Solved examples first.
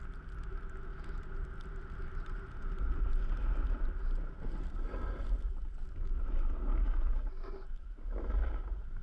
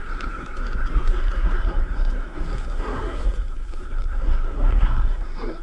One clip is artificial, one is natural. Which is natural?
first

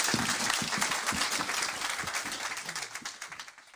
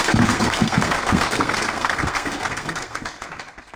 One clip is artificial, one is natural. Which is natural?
first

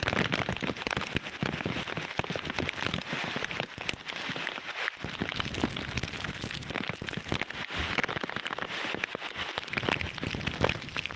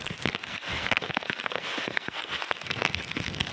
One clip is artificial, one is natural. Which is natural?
first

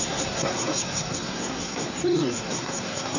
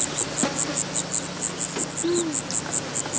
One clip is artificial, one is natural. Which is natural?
second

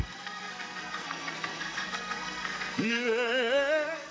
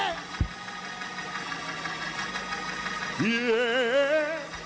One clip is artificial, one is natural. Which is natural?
second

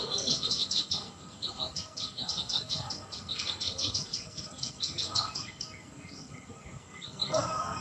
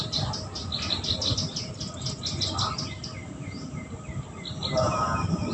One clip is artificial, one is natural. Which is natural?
second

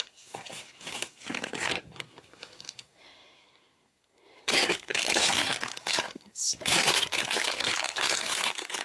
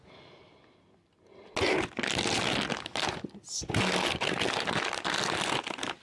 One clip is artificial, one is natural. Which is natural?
second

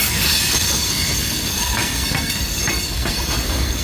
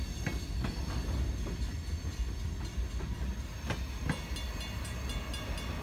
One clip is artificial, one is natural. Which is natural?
second